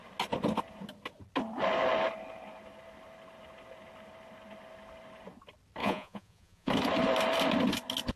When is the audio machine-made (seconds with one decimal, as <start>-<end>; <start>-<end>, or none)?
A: 5.8-6.7